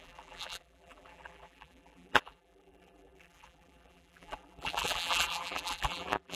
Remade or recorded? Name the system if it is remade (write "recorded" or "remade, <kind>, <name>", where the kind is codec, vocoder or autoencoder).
remade, vocoder, BigVGAN v2